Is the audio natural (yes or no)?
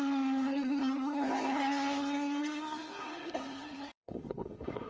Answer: no